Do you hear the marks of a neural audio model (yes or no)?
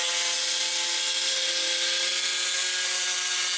no